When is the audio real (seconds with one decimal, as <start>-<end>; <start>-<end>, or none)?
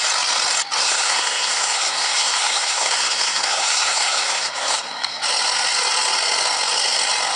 0.0-0.8; 5.2-7.4